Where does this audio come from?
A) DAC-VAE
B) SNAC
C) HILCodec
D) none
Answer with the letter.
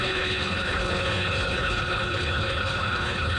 C